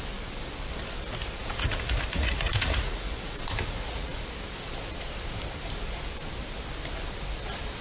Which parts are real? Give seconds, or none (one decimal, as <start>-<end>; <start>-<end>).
0.0-1.4; 4.2-7.8